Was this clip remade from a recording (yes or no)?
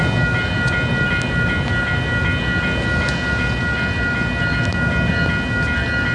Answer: no